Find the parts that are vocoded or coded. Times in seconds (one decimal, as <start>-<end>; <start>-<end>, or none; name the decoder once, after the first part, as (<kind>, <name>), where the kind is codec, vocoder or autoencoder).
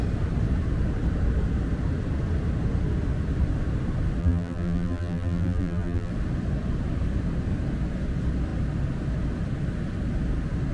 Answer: 4.2-6.1 (vocoder, BigVGAN v2)